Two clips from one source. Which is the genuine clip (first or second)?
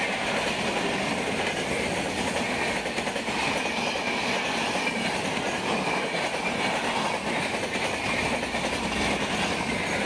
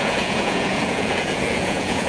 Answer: first